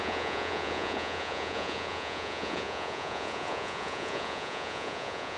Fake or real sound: fake